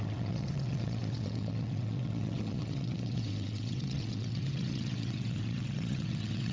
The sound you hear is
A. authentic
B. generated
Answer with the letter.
B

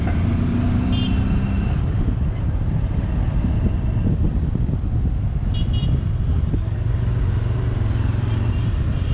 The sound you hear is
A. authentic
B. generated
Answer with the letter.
A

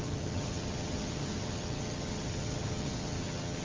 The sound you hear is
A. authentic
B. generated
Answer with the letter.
B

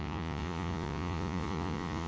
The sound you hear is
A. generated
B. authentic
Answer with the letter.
A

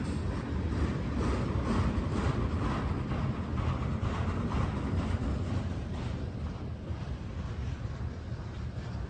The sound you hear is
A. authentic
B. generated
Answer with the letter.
B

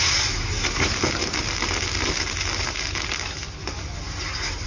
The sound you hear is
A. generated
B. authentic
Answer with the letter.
B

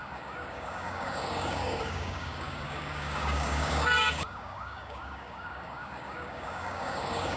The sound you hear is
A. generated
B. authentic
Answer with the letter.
A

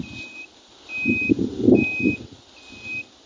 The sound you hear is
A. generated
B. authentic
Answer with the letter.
B